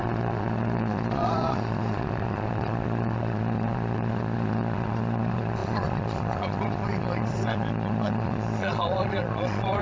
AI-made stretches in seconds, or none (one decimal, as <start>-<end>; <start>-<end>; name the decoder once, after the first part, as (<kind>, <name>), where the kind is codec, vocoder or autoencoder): 0.0-9.8 (vocoder, Vocos)